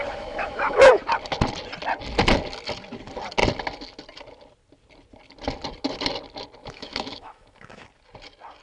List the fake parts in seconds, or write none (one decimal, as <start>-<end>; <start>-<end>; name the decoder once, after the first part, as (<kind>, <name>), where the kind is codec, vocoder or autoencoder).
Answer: 0.0-1.0 (autoencoder, DAC-VAE); 6.6-7.9